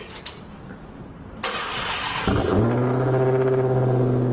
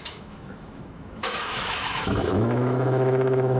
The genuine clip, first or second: first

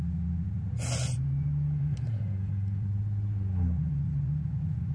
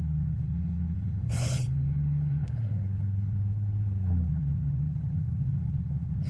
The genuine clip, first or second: first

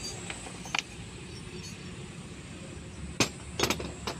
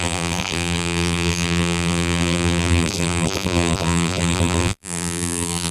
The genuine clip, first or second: first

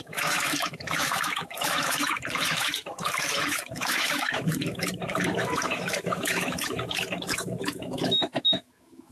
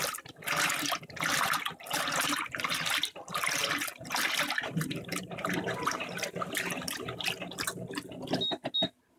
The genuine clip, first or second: second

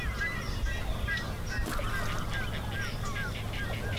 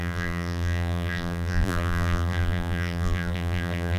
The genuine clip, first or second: first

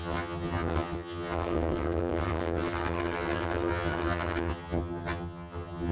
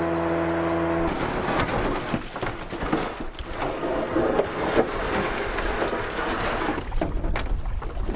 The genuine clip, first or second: second